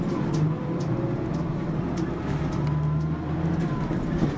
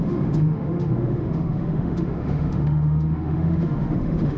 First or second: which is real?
first